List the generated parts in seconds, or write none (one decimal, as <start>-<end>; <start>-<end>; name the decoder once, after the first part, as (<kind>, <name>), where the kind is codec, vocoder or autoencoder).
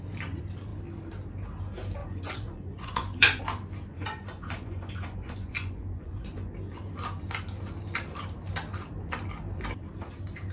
2.0-3.4 (vocoder, Vocos); 3.9-6.5